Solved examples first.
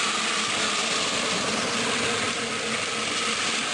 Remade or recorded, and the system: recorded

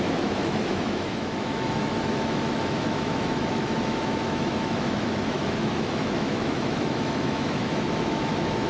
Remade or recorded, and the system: remade, autoencoder, DAC-VAE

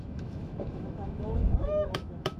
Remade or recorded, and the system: remade, autoencoder, DAC-VAE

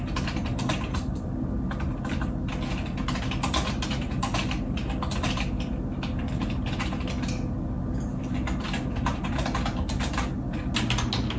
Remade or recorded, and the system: recorded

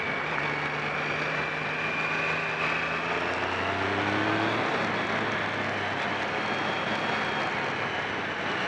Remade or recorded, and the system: recorded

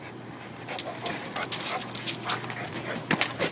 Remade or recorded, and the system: recorded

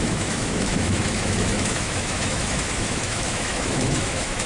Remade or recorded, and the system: remade, autoencoder, DAC-VAE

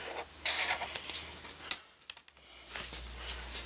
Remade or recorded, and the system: recorded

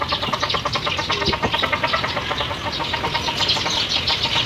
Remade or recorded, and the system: recorded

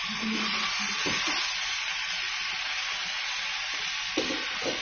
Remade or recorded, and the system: recorded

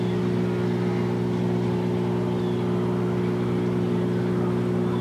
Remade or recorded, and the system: recorded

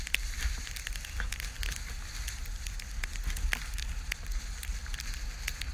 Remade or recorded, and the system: recorded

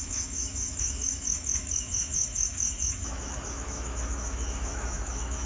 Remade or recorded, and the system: remade, autoencoder, DAC-VAE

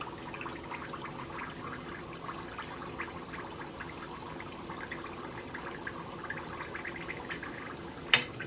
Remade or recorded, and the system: recorded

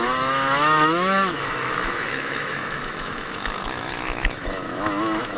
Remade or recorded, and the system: remade, autoencoder, DAC-VAE